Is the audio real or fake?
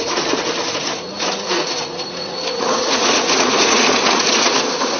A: fake